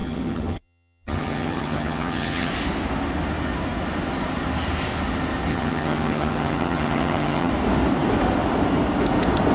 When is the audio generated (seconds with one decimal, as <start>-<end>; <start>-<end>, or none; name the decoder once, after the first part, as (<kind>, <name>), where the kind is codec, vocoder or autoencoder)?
0.0-2.5 (vocoder, HiFi-GAN); 5.5-7.5